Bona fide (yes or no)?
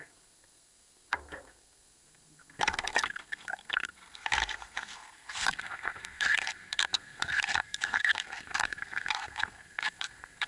no